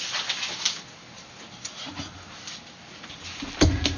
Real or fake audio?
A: real